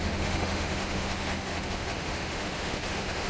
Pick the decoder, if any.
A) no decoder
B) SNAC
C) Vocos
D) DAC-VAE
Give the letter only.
D